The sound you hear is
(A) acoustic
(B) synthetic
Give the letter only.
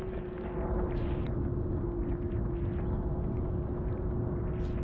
A